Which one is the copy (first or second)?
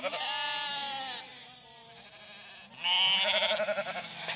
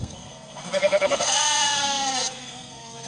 second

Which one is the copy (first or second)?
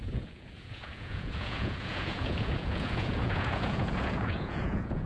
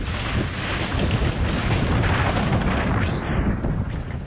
first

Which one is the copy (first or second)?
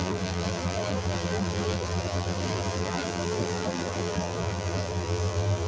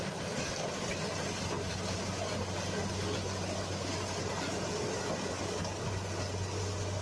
first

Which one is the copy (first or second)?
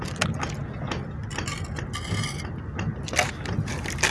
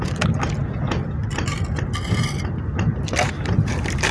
second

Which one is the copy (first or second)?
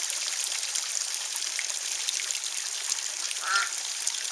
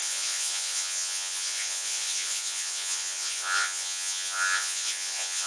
second